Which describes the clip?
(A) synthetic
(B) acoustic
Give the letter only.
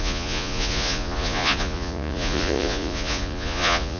A